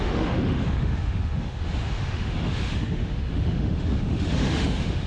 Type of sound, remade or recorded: remade